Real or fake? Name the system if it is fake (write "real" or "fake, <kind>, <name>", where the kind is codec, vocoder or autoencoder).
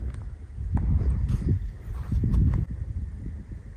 real